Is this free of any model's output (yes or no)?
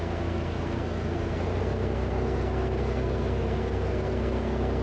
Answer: no